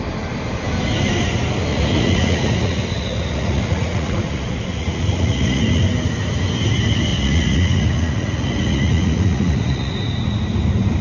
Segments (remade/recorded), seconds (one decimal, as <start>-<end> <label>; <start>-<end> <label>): 0.0-1.7 recorded; 1.7-5.8 remade; 5.8-7.1 recorded; 7.1-9.9 remade; 9.9-11.0 recorded